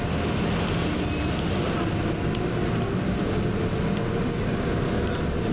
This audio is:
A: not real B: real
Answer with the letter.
B